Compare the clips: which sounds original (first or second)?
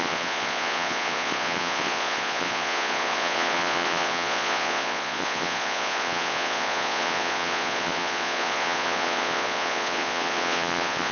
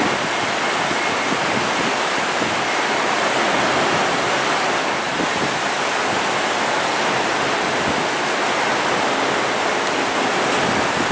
second